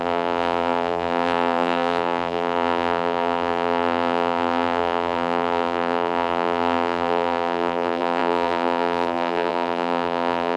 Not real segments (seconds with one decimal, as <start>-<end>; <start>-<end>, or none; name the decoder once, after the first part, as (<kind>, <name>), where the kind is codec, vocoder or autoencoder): 0.0-10.6 (vocoder, BigVGAN v2)